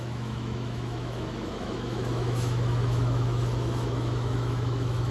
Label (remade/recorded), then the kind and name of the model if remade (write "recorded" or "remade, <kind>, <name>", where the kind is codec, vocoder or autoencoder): remade, autoencoder, DAC-VAE